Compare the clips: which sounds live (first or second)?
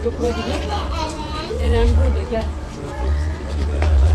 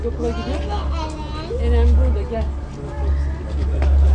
second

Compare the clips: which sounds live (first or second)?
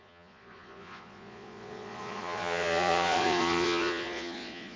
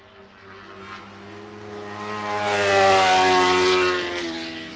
second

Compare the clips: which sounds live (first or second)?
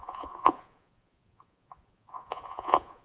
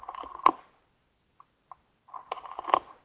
second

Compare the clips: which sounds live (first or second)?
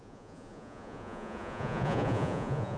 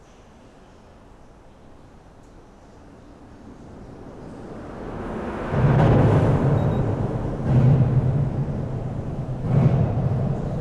second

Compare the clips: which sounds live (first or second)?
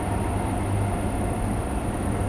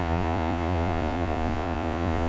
first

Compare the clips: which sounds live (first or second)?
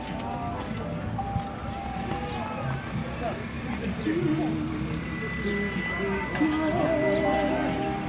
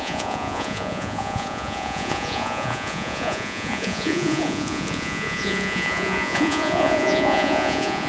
first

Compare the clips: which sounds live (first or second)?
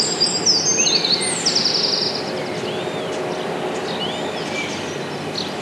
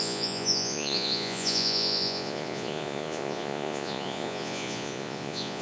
first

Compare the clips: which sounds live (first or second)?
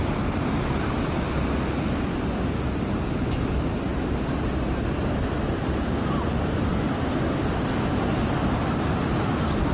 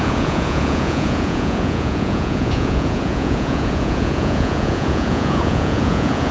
first